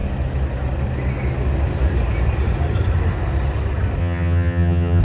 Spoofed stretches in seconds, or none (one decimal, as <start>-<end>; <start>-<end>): 4.0-5.0